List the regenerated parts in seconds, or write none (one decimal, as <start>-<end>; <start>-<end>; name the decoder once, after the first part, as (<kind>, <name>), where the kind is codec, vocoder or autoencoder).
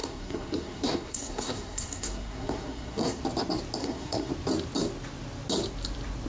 0.0-3.2 (codec, SNAC); 3.8-4.3